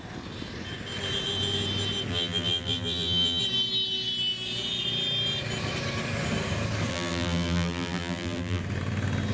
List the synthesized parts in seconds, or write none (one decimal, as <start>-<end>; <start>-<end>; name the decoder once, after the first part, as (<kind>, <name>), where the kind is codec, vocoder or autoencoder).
2.1-3.4 (vocoder, BigVGAN v2); 6.9-8.6